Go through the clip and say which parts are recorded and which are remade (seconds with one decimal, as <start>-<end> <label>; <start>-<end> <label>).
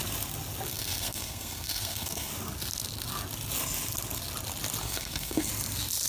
0.0-0.7 recorded; 0.7-2.3 remade; 2.3-4.8 recorded; 4.8-5.5 remade; 5.5-6.1 recorded